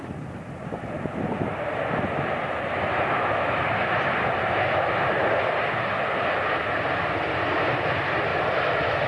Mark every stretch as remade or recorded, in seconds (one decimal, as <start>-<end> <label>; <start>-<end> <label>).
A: 0.0-9.1 recorded